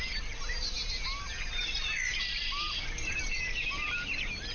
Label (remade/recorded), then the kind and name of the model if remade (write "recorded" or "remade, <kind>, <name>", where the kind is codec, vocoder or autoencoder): recorded